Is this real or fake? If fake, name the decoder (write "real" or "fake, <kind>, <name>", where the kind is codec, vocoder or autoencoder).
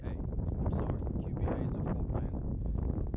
real